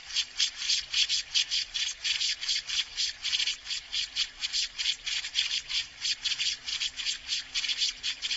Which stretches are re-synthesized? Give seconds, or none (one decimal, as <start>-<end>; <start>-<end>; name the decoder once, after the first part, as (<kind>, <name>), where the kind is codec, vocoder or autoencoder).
0.0-8.4 (vocoder, BigVGAN v2)